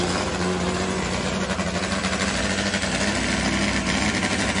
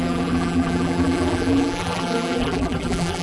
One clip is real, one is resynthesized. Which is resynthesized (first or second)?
second